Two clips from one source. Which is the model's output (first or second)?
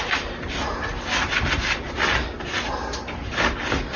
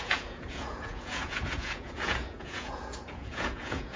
second